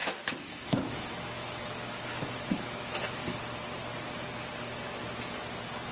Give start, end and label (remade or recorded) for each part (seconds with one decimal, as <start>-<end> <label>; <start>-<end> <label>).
0.0-3.4 remade; 3.4-5.9 recorded